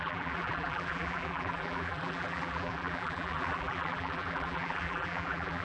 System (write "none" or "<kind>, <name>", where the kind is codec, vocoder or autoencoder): vocoder, BigVGAN v2